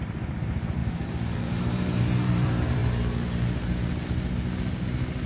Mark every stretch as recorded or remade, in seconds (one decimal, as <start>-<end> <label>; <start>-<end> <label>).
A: 0.0-0.8 remade; 0.8-1.4 recorded; 1.4-2.8 remade; 2.8-5.3 recorded